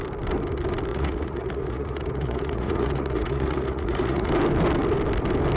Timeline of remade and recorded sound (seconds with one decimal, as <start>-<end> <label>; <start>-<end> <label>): 0.0-0.9 recorded; 0.9-4.3 remade; 4.3-5.6 recorded